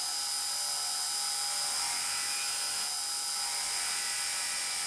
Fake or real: real